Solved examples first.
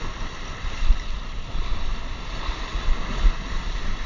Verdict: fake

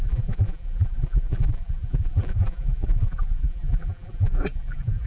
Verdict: fake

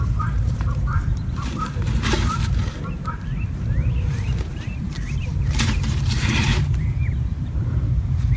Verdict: fake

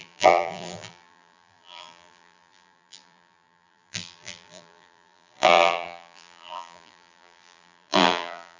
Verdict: fake